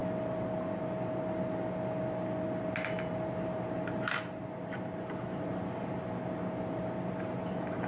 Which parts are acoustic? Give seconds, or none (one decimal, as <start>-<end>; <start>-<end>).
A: 0.0-7.9

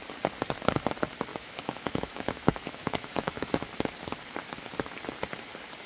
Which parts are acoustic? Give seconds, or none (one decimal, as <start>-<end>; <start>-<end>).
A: 0.0-1.3; 3.5-5.9

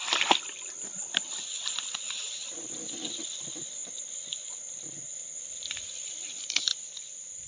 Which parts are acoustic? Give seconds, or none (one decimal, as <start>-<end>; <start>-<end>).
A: 0.0-7.5

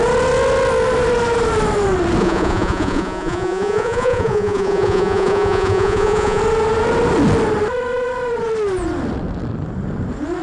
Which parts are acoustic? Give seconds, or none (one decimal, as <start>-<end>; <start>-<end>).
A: 0.0-2.2; 6.4-10.4

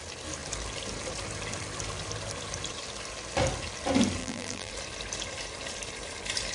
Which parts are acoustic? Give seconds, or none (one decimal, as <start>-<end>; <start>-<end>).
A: 0.0-4.2; 4.7-6.5

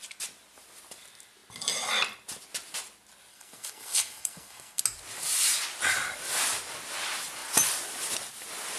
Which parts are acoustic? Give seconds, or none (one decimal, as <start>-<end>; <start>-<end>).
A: 0.0-3.3; 4.8-8.8